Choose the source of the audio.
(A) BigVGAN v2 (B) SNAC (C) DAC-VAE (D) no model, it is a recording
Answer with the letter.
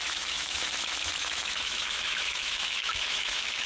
C